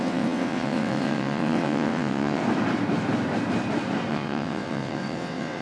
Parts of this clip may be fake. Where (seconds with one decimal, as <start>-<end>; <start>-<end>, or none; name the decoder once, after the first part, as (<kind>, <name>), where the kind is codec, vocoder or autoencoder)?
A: 0.0-2.4 (vocoder, WaveNeXt); 4.1-5.6

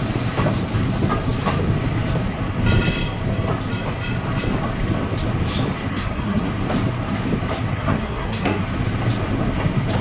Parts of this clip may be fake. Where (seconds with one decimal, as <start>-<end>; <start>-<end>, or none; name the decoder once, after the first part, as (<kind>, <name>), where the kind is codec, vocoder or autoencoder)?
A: 5.9-6.5 (codec, SNAC); 7.7-8.6

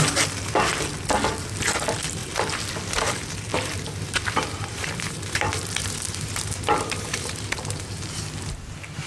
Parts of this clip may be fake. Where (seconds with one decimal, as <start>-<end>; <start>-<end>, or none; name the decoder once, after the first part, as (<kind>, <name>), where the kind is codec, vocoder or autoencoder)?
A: 2.2-2.7 (vocoder, BigVGAN v2); 3.5-8.2

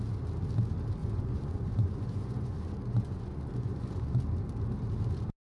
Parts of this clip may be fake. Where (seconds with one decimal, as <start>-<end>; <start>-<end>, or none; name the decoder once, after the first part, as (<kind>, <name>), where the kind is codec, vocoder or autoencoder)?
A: 1.0-4.2 (vocoder, Vocos)

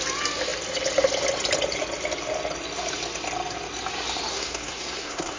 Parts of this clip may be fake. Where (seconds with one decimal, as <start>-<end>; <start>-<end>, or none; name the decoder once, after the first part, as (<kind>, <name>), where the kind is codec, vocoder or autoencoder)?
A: 4.3-5.4 (codec, SNAC)

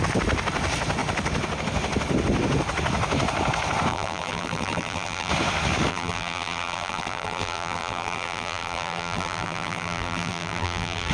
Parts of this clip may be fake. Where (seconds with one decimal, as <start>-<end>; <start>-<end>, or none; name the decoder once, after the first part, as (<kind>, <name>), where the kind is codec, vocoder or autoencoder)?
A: 3.9-5.3 (vocoder, BigVGAN v2); 5.9-11.1